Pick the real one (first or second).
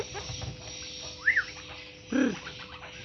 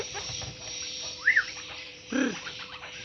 first